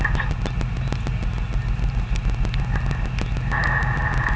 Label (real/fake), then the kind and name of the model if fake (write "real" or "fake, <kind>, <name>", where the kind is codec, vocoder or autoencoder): real